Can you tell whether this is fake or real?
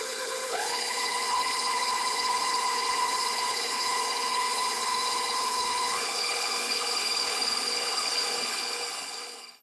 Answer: fake